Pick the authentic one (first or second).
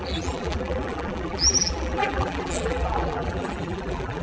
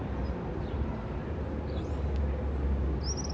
second